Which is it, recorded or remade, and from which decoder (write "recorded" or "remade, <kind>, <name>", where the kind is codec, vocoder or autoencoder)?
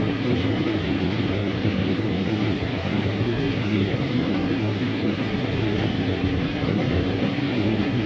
remade, codec, SNAC